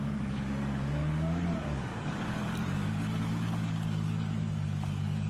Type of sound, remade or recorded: remade